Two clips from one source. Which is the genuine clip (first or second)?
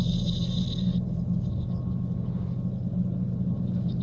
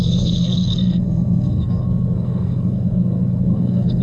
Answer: first